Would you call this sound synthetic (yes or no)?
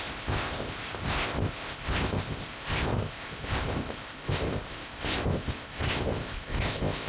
yes